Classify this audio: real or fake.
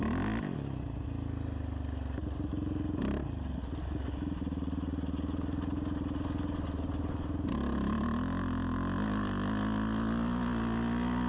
real